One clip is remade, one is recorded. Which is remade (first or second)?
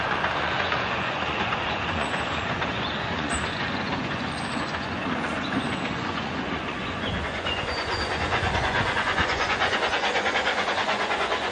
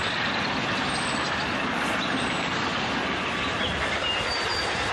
first